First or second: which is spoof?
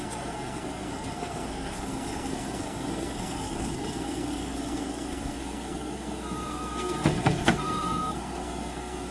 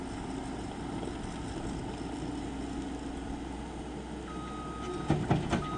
first